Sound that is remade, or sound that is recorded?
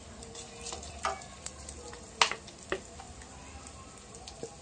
recorded